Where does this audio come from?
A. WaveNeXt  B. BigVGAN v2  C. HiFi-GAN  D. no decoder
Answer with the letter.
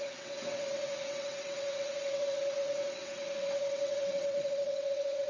A